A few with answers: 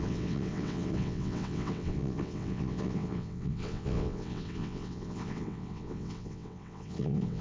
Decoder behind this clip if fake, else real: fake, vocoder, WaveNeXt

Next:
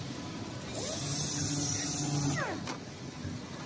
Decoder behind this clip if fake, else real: real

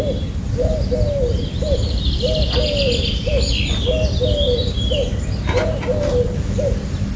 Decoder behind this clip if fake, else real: real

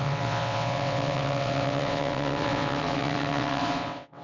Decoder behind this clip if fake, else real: fake, vocoder, WaveNeXt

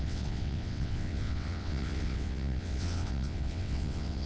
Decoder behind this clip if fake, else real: fake, vocoder, WaveNeXt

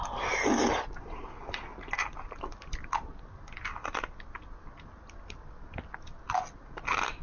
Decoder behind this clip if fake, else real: real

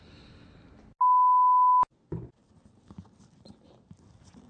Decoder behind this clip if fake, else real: real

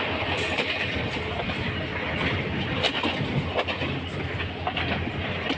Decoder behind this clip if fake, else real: real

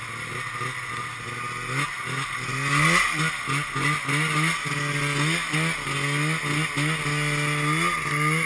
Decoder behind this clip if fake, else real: real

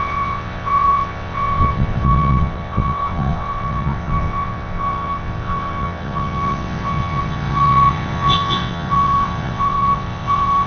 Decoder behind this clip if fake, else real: fake, vocoder, WaveNeXt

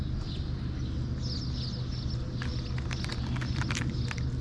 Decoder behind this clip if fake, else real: real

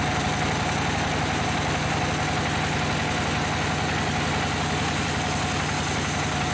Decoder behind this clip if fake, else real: real